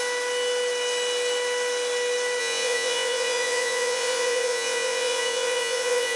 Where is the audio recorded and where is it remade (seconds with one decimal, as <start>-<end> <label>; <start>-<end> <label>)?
0.0-2.4 recorded; 2.4-6.2 remade